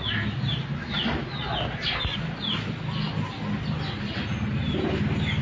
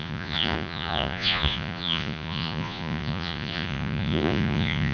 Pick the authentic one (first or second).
first